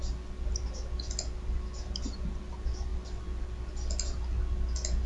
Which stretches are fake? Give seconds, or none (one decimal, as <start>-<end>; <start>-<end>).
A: none